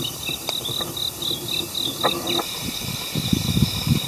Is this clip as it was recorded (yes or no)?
yes